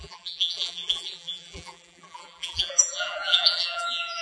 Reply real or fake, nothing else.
fake